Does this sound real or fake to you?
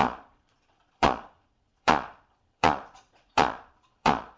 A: fake